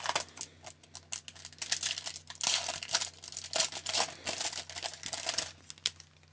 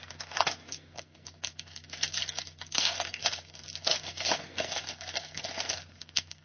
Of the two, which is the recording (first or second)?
first